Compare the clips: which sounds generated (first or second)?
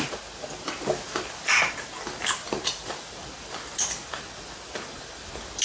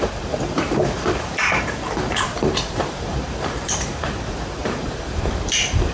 second